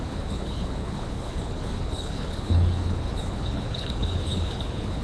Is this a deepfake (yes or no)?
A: yes